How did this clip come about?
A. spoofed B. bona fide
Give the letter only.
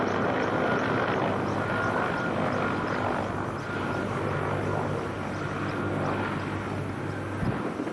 B